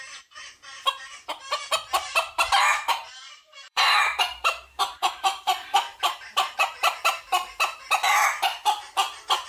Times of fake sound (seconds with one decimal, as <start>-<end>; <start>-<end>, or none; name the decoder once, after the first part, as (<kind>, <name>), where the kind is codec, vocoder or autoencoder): 2.2-7.2 (vocoder, BigVGAN v2)